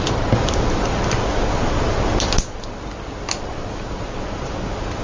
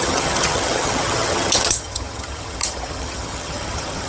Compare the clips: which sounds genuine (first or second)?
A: first